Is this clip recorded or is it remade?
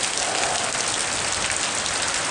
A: recorded